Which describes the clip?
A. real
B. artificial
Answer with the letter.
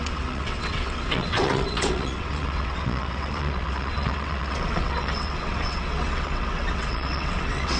B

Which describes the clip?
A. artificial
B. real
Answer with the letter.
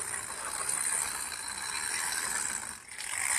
B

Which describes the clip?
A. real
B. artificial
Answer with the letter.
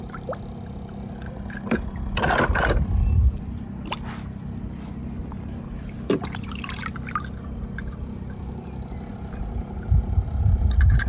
A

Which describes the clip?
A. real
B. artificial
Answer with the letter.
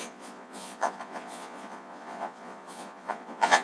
B